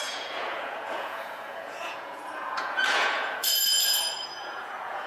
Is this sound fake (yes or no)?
yes